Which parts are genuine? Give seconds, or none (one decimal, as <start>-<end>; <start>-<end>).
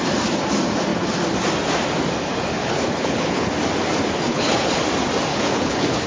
0.0-2.5; 3.5-4.3; 4.8-5.3